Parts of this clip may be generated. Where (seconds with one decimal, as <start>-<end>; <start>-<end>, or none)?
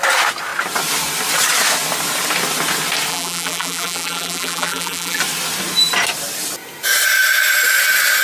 3.1-5.2